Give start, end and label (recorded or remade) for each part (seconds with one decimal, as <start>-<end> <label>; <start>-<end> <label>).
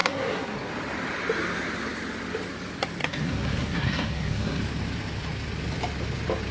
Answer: 0.0-0.7 remade; 0.7-3.0 recorded; 3.0-4.6 remade; 4.6-6.5 recorded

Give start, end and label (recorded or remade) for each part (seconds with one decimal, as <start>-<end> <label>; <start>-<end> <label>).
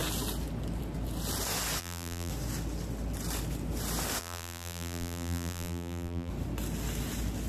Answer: 0.0-1.8 recorded; 1.8-2.3 remade; 2.3-4.2 recorded; 4.2-6.3 remade; 6.3-7.5 recorded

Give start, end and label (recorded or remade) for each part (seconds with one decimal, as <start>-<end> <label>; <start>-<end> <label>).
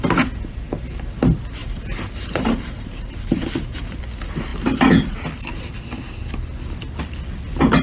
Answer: 0.0-1.6 recorded; 1.6-4.0 remade; 4.0-7.8 recorded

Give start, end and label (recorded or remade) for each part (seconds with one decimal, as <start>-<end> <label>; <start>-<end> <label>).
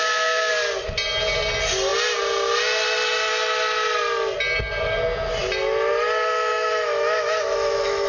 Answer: 0.0-0.5 remade; 0.5-6.5 recorded; 6.5-8.1 remade